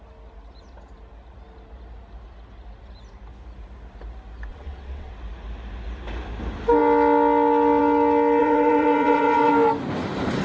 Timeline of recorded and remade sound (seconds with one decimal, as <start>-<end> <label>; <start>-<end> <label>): 0.0-4.5 recorded; 4.5-5.1 remade; 5.1-8.4 recorded; 8.4-9.5 remade; 9.5-10.4 recorded

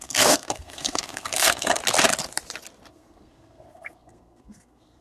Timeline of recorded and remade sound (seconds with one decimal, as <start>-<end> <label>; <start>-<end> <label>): 0.0-1.8 remade; 1.8-2.9 recorded; 2.9-5.0 remade

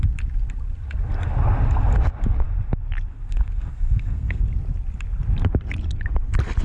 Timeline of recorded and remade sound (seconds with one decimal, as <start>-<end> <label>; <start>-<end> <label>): 0.0-3.1 recorded; 3.1-4.4 remade; 4.4-6.6 recorded

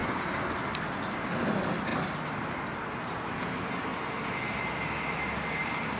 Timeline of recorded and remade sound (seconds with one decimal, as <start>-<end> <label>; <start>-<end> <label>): 0.0-6.0 recorded

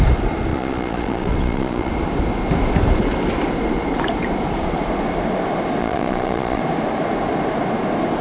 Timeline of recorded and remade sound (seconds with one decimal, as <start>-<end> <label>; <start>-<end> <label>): 0.0-0.5 recorded; 0.5-1.9 remade; 1.9-5.8 recorded; 5.8-6.6 remade; 6.6-8.2 recorded